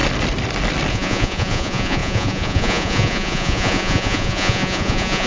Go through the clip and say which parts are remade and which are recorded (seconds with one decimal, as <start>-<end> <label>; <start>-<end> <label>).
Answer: 0.0-0.9 recorded; 0.9-5.3 remade